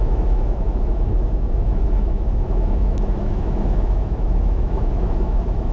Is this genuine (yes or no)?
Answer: no